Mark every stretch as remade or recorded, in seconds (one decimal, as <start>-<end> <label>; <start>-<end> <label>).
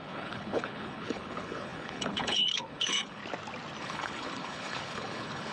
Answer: 0.0-3.2 remade; 3.2-3.8 recorded; 3.8-5.5 remade